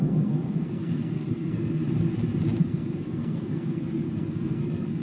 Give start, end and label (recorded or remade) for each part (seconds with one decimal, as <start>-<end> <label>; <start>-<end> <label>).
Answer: 0.0-1.8 remade; 1.8-2.6 recorded; 2.6-5.0 remade